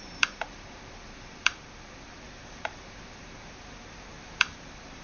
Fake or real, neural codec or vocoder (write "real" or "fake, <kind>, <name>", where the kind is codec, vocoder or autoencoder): fake, vocoder, BigVGAN v2